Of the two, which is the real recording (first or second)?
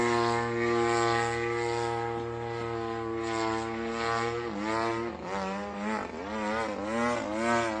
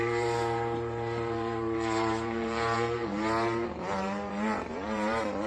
first